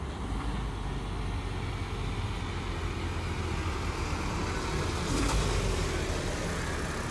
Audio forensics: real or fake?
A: real